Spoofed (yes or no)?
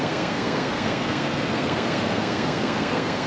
yes